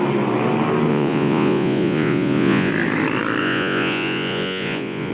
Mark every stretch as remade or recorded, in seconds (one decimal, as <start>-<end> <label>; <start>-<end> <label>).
0.0-0.9 recorded; 0.9-2.7 remade; 2.7-3.4 recorded; 3.4-5.1 remade